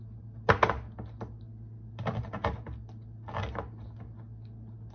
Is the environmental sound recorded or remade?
recorded